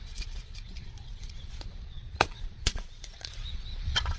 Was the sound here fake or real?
fake